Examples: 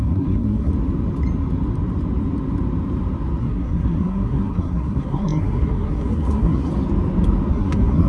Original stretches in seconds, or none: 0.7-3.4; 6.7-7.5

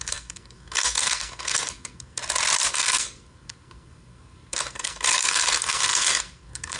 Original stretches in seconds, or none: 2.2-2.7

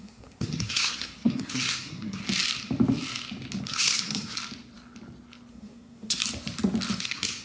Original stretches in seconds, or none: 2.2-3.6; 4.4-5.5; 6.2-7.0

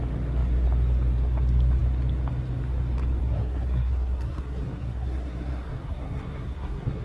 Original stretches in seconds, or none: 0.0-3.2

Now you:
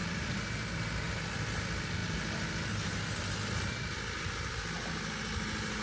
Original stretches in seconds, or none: 0.0-5.8

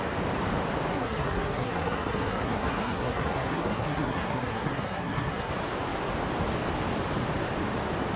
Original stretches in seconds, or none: 0.0-0.9; 5.5-8.2

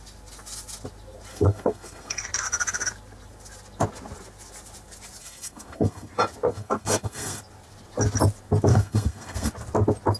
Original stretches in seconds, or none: 0.0-1.3; 2.2-5.2; 6.1-6.5; 7.4-8.7; 9.5-10.2

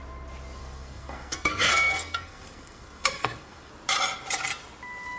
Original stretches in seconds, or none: 0.0-0.6; 3.7-5.2